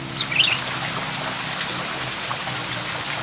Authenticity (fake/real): real